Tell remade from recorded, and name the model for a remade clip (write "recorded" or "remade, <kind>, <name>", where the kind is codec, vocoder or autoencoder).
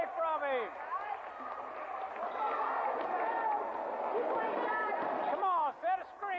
recorded